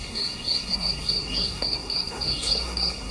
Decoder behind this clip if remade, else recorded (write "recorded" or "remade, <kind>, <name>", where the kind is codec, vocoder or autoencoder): remade, codec, SNAC